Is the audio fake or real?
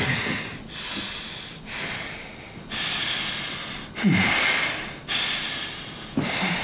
real